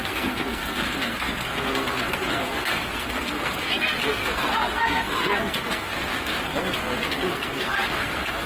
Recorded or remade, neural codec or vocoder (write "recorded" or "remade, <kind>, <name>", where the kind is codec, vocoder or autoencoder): remade, codec, SNAC